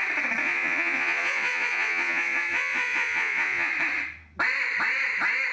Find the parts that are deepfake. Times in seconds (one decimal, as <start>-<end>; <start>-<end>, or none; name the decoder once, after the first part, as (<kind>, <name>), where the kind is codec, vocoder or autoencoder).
0.4-3.7 (vocoder, Vocos)